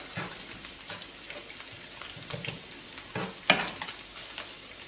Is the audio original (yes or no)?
yes